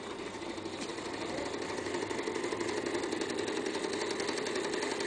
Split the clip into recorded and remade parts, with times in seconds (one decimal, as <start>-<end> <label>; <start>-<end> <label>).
0.0-0.9 recorded; 0.9-4.0 remade; 4.0-5.1 recorded